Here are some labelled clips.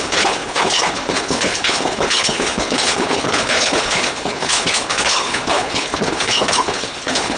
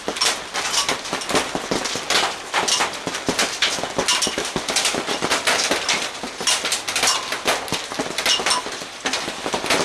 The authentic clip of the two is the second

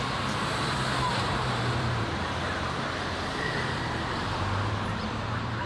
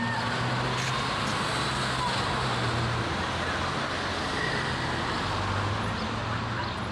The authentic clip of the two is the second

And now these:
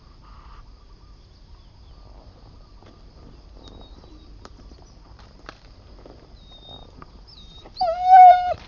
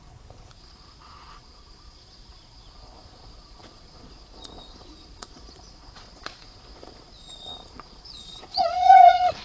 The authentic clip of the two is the first